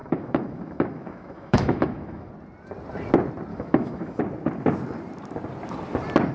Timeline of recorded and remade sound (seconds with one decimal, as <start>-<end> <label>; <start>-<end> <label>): 0.0-2.3 remade; 2.3-3.5 recorded; 3.5-4.2 remade; 4.2-6.3 recorded